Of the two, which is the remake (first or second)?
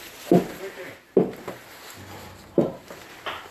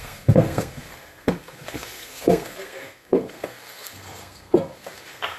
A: second